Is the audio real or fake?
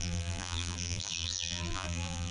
fake